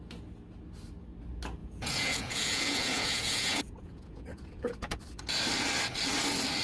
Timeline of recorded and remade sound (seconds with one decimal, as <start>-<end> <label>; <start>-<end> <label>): 0.0-1.6 recorded; 1.6-5.0 remade; 5.0-6.6 recorded